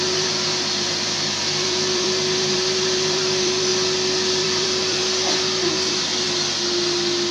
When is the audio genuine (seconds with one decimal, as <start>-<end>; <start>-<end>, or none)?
3.7-4.3; 5.0-5.9; 6.5-7.3

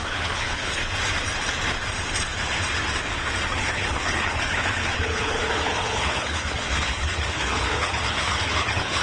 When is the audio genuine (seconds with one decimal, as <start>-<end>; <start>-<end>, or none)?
0.8-3.5

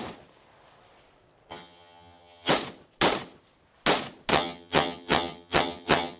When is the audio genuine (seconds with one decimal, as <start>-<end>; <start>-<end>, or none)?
0.0-1.5; 2.5-4.3

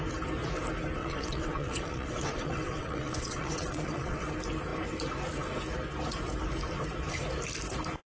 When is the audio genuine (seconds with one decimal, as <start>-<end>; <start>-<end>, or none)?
0.0-1.0; 4.3-8.1

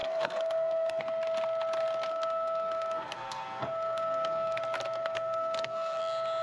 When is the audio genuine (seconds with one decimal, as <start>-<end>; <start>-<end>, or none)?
1.0-2.1; 4.6-5.0; 6.0-6.4

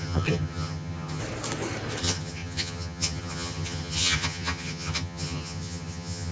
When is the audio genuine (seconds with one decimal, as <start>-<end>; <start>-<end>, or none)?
1.2-2.0

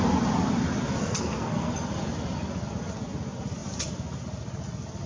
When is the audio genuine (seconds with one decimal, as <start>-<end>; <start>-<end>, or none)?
0.0-1.0; 1.7-5.1